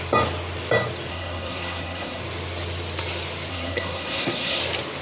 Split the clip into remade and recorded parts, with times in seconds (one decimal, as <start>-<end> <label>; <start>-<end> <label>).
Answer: 0.0-1.1 recorded; 1.1-2.2 remade; 2.2-3.5 recorded; 3.5-4.6 remade; 4.6-5.0 recorded